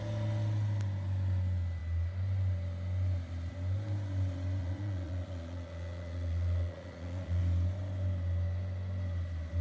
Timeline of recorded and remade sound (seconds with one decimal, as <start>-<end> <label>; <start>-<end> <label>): 0.0-4.6 recorded; 4.6-7.4 remade; 7.4-9.6 recorded